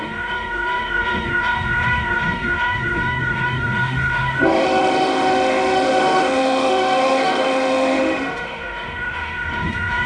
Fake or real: fake